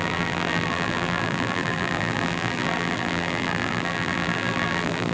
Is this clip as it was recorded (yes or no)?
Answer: no